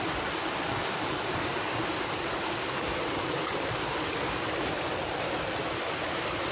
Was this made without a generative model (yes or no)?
yes